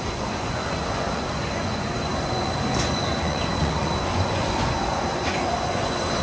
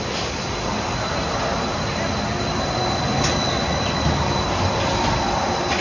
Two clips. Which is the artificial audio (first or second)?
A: first